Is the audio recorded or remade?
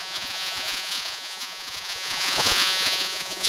remade